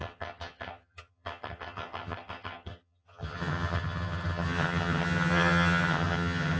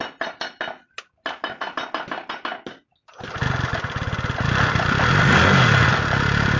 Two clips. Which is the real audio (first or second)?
second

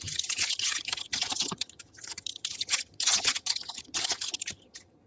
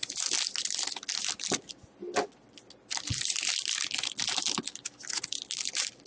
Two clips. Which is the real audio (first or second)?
second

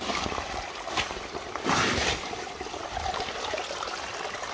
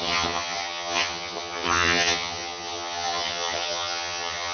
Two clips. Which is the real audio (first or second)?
first